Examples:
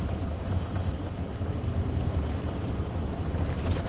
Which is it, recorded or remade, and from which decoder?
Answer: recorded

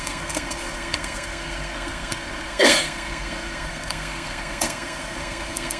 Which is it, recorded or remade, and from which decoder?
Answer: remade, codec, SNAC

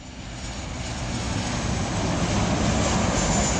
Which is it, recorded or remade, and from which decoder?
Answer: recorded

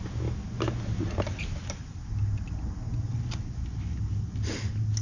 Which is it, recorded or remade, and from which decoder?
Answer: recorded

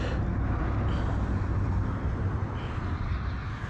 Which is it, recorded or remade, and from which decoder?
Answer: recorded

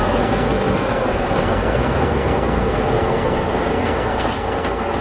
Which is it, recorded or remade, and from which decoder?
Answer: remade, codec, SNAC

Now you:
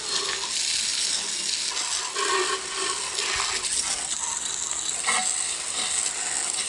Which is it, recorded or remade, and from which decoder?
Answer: recorded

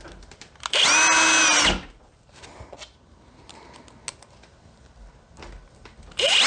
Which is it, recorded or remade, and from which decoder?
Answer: recorded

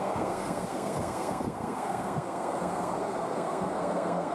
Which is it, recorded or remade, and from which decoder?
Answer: remade, codec, SNAC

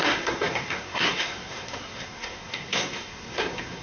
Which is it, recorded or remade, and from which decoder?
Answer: remade, codec, SNAC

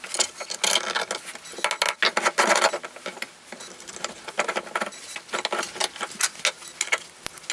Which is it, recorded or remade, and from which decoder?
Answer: recorded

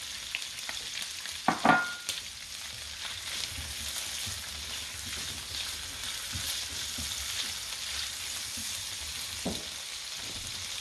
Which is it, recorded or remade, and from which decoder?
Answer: recorded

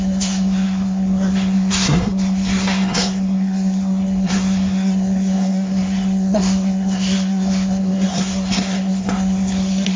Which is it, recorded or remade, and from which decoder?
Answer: remade, codec, SNAC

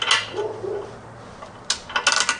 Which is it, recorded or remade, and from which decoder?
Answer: recorded